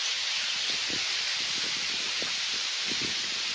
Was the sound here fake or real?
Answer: real